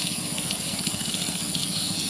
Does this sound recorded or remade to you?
remade